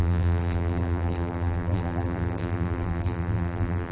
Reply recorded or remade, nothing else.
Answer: remade